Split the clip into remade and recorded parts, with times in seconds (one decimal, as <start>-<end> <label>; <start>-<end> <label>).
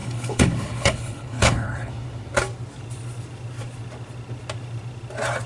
0.0-1.9 remade; 1.9-5.5 recorded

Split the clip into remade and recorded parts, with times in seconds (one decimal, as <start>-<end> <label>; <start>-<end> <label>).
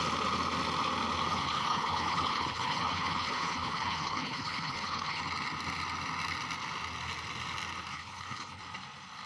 0.0-1.3 recorded; 1.3-5.2 remade; 5.2-7.9 recorded; 7.9-8.6 remade; 8.6-9.3 recorded